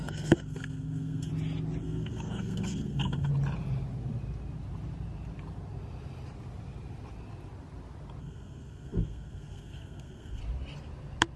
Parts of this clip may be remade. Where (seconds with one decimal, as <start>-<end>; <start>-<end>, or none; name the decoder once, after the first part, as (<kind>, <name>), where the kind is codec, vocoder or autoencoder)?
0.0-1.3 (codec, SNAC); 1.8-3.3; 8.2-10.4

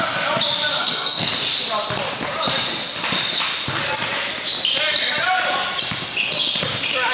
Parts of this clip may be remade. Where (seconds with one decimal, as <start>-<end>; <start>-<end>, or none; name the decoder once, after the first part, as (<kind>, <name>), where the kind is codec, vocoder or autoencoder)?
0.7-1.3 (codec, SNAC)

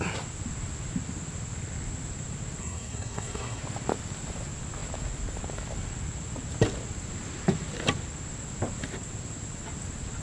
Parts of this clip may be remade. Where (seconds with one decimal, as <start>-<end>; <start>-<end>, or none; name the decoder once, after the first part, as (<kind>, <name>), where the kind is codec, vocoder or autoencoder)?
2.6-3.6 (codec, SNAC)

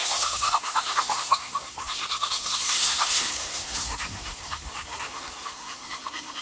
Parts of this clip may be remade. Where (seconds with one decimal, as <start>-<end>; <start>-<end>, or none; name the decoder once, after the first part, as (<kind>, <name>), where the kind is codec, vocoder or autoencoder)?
0.0-6.4 (codec, SNAC)

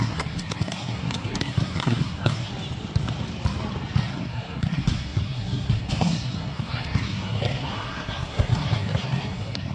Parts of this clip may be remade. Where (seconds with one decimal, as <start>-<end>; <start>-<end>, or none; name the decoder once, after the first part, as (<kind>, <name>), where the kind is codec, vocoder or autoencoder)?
0.0-2.5 (codec, SNAC); 4.1-9.7